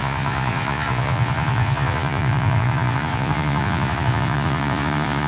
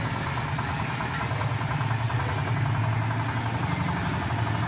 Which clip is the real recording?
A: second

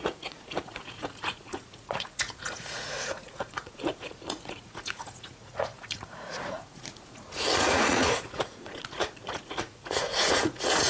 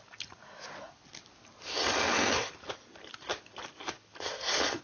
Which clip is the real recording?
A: second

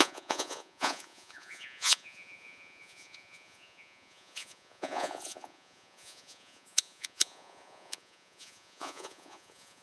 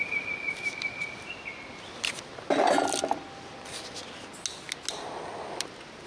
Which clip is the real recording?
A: second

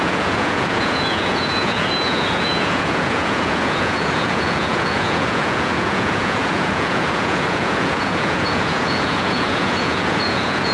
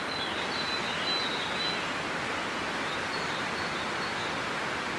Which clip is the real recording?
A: second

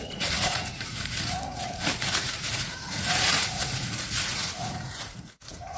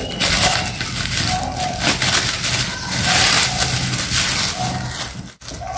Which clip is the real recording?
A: second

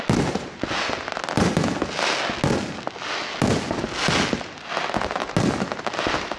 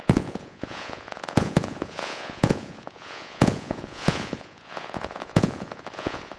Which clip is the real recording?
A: first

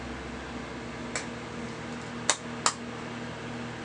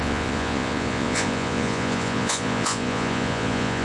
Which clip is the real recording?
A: first